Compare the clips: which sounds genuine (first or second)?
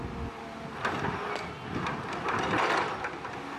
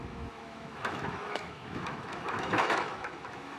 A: first